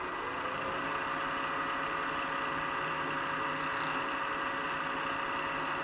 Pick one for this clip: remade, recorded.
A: recorded